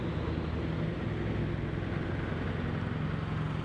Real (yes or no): yes